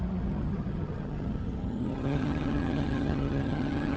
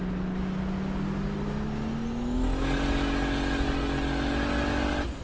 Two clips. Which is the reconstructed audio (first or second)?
first